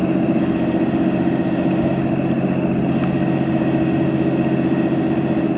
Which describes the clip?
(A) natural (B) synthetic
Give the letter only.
A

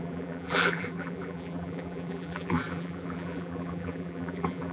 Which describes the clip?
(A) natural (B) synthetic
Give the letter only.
B